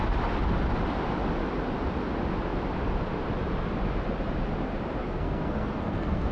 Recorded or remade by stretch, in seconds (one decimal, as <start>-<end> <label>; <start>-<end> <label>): 0.0-5.0 recorded; 5.0-6.3 remade